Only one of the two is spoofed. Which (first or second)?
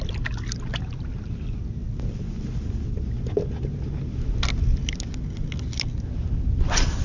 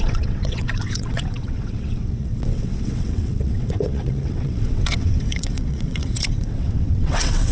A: second